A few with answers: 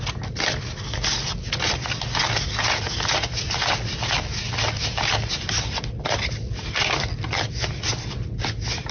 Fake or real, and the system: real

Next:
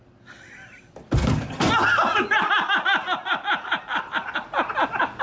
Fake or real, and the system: real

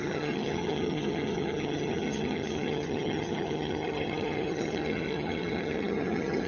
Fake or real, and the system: fake, vocoder, HiFi-GAN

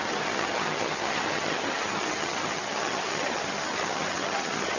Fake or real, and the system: fake, vocoder, HiFi-GAN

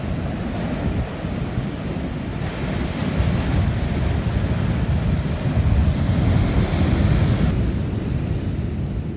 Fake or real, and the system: real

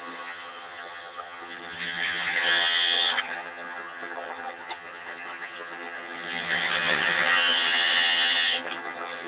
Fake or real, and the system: fake, vocoder, HiFi-GAN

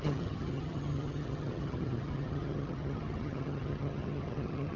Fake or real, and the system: fake, vocoder, HiFi-GAN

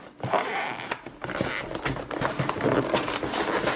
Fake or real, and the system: real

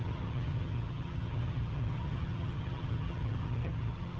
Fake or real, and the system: fake, vocoder, HiFi-GAN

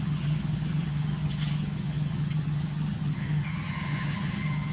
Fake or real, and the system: fake, vocoder, HiFi-GAN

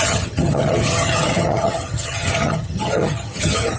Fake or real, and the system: fake, vocoder, HiFi-GAN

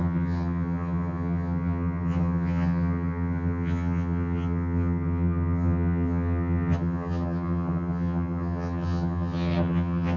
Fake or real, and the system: fake, vocoder, HiFi-GAN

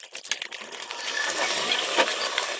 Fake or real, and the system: real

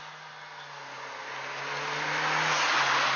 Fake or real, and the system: real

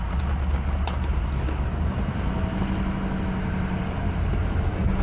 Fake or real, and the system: real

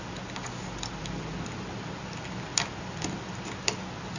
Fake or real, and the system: real